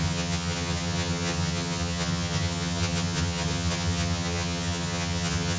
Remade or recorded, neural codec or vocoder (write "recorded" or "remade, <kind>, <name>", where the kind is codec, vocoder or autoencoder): remade, vocoder, HiFi-GAN